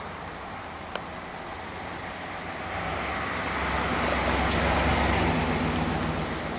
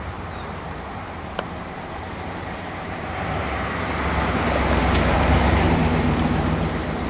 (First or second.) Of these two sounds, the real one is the first